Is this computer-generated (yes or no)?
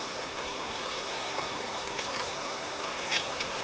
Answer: yes